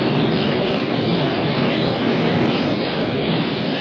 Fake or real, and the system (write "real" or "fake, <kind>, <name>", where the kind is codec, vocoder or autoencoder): fake, codec, DAC